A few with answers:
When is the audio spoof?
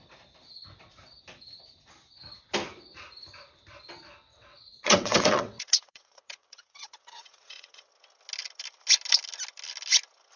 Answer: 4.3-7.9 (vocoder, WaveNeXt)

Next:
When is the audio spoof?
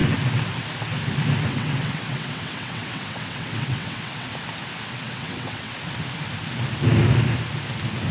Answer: 1.5-4.3 (vocoder, WaveNeXt); 4.9-5.7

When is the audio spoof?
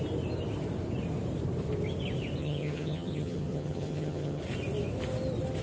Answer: 2.4-4.4 (vocoder, HiFi-GAN)